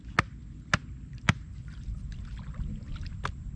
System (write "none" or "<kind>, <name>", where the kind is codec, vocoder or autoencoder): none